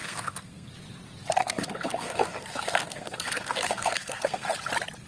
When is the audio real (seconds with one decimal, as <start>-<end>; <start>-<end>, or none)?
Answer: 0.7-1.4; 4.5-5.1